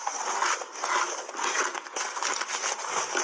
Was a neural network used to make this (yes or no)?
no